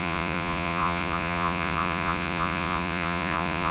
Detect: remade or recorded remade